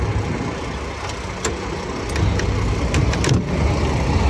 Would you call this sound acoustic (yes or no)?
yes